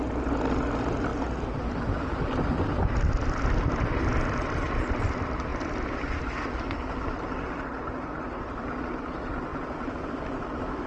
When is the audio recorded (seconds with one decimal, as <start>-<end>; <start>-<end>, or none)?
0.0-5.5; 6.2-10.9